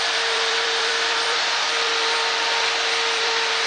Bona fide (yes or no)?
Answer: no